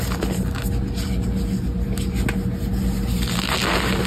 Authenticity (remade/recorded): recorded